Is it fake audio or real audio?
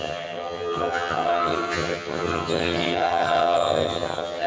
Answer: fake